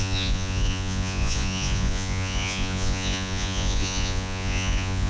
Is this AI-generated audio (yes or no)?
yes